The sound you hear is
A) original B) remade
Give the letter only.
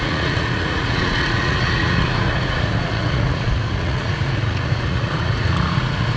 B